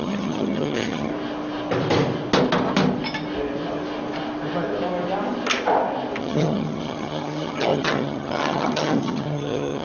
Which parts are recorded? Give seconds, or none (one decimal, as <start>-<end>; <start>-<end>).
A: 1.1-6.2